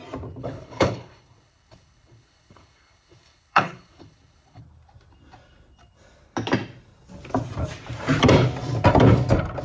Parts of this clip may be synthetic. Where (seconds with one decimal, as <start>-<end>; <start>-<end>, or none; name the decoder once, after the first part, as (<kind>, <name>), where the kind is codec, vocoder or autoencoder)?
0.4-4.6 (codec, HILCodec)